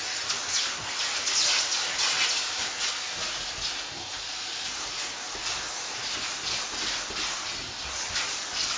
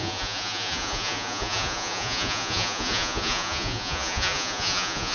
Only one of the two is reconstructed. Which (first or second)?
second